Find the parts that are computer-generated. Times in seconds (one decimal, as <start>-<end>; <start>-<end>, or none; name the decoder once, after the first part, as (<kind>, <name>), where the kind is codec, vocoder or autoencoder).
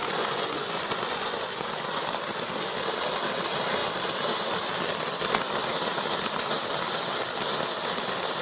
0.0-1.7 (vocoder, Vocos)